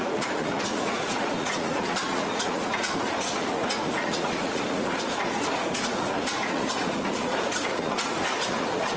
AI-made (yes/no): yes